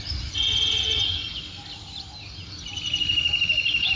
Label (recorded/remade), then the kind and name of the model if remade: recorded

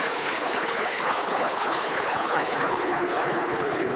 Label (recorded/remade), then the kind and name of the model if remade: remade, codec, HILCodec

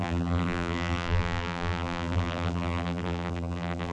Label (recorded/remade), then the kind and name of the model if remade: remade, vocoder, BigVGAN v2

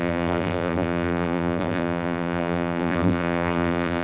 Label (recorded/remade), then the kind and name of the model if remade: remade, vocoder, BigVGAN v2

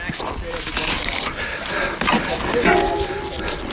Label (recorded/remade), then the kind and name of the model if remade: recorded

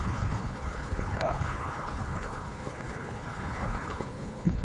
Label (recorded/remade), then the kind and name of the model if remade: remade, codec, HILCodec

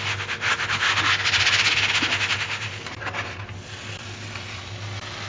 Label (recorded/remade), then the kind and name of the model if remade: recorded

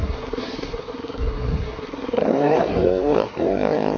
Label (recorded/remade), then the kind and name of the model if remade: remade, codec, SNAC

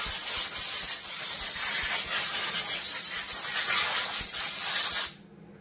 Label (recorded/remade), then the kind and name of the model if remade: recorded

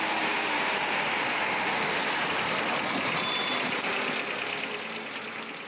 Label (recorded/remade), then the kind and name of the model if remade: recorded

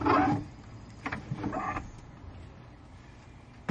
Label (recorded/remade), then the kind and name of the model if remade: recorded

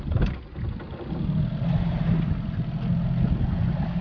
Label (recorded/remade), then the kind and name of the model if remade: recorded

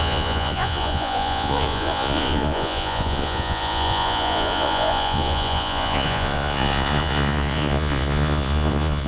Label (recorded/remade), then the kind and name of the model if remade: remade, vocoder, Vocos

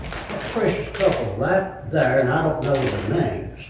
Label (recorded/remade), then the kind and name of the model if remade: recorded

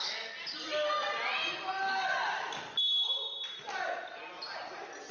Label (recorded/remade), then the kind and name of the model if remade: recorded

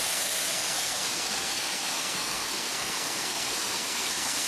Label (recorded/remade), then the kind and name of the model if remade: remade, codec, SNAC